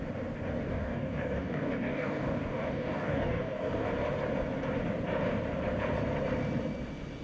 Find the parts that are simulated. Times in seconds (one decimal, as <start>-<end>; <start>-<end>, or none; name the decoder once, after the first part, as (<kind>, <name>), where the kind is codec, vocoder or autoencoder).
0.7-3.9 (codec, DAC)